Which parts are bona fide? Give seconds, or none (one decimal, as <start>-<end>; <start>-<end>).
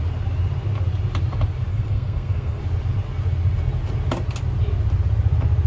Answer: 0.0-1.7; 2.6-5.7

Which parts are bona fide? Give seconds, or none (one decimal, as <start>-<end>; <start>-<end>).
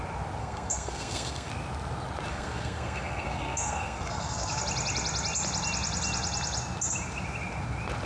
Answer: 0.0-0.4; 1.5-2.3; 4.6-8.1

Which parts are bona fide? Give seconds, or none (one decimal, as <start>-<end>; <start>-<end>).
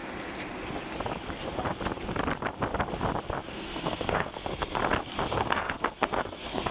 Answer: 0.0-3.5; 4.8-5.4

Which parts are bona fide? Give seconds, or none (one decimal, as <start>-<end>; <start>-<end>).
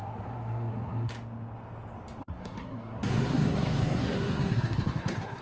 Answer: 1.1-2.2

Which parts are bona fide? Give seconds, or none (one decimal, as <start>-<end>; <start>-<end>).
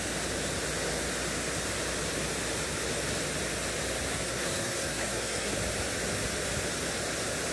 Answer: 0.0-4.1; 5.6-7.5